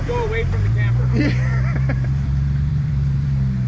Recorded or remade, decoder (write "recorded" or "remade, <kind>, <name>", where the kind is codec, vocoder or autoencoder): remade, vocoder, BigVGAN v2